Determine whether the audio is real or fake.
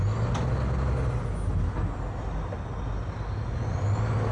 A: real